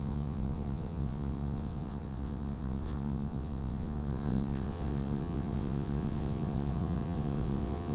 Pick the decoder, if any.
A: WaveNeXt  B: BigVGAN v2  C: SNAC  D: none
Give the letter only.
A